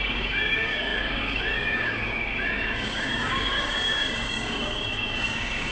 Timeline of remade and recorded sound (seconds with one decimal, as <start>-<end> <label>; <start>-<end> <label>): 0.0-5.7 remade